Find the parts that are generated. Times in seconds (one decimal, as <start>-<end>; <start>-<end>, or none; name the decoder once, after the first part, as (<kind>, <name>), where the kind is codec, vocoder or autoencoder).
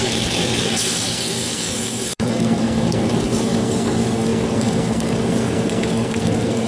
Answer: 0.0-6.7 (codec, SNAC)